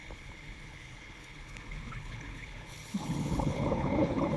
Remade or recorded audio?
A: remade